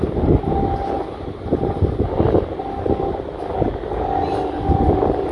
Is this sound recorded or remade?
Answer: recorded